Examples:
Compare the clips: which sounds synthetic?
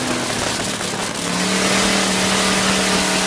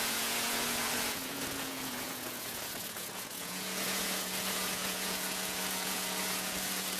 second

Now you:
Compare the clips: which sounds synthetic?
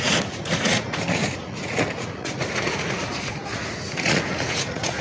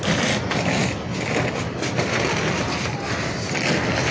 first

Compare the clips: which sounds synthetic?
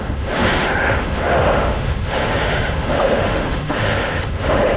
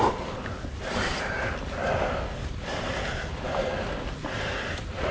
first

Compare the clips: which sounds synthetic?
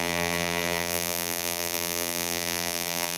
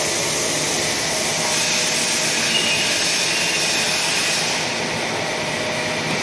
first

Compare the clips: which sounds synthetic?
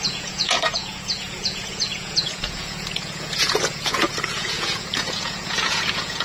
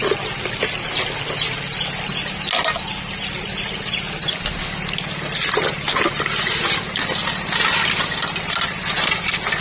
first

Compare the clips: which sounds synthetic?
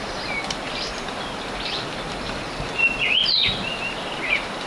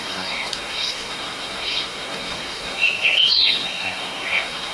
second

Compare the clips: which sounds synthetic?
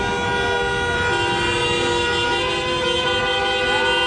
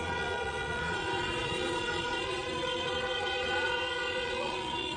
second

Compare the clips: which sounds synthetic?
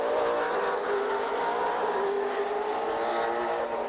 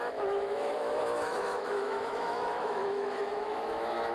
second